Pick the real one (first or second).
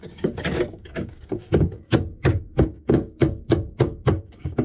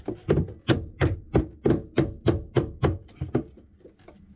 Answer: second